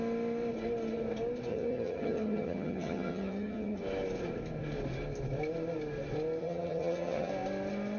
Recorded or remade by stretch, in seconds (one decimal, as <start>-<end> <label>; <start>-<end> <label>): 0.0-1.5 recorded; 1.5-3.8 remade; 3.8-6.4 recorded; 6.4-7.3 remade; 7.3-8.0 recorded